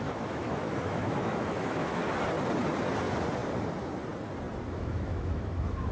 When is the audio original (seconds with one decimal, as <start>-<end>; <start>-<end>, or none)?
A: 2.0-4.7